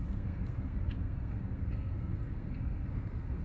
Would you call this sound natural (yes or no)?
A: no